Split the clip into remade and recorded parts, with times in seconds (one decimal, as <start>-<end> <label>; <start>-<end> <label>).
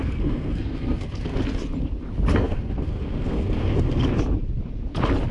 0.0-1.4 remade; 1.4-2.3 recorded; 2.3-4.0 remade; 4.0-5.3 recorded